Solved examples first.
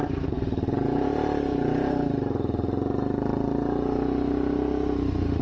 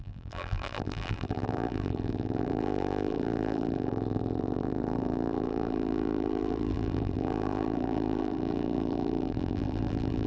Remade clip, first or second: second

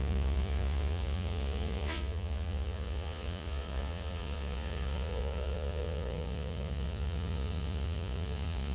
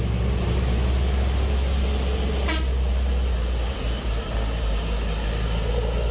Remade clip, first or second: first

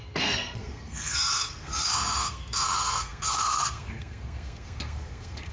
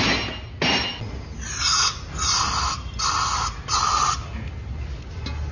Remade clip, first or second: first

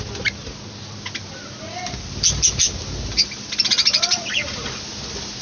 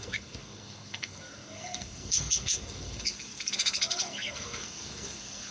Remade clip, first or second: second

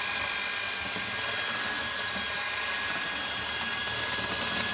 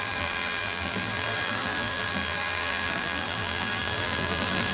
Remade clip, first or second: second